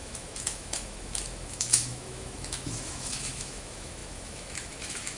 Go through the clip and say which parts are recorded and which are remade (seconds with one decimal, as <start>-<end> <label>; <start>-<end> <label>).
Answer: 0.0-5.2 remade